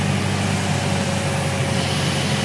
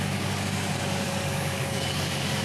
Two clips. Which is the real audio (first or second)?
first